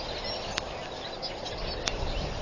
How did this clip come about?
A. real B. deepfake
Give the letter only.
A